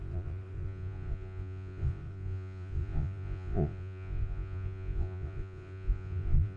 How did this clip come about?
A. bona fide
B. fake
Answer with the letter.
B